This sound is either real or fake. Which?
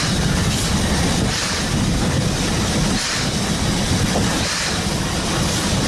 real